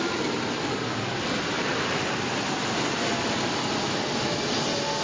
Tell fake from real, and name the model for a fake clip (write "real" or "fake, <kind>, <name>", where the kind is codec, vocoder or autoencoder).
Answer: real